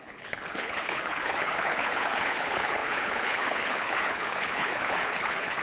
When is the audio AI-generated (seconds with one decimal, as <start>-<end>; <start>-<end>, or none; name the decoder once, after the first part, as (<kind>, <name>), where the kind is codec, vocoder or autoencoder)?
0.0-5.6 (codec, HILCodec)